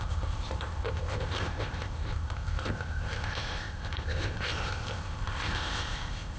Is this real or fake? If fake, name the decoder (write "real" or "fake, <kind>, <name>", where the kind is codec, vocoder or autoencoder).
fake, codec, ZipCodec